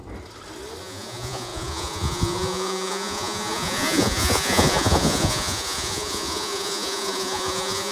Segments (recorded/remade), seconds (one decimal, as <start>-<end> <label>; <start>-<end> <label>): 0.0-0.8 recorded; 0.8-7.9 remade